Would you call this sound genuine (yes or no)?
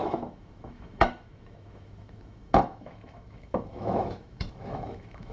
no